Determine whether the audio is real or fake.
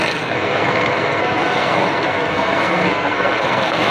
fake